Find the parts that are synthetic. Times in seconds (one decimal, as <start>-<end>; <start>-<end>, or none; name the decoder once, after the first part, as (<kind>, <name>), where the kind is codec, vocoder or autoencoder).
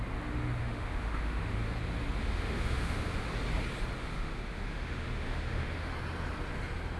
0.6-1.6 (autoencoder, DAC-VAE); 2.2-3.3; 4.0-5.9